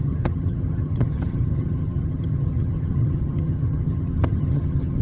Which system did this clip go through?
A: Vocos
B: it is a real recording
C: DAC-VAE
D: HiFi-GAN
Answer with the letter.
D